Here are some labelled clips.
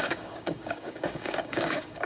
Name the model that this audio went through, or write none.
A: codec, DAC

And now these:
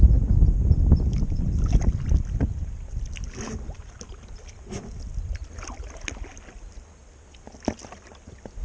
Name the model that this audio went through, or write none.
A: none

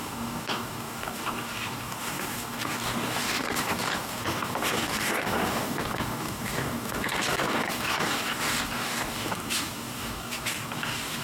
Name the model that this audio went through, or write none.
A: codec, DAC